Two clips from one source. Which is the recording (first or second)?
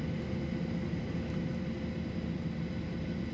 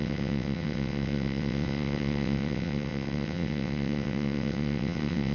first